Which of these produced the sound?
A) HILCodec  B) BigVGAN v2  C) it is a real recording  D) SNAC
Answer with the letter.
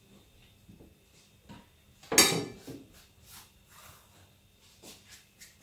C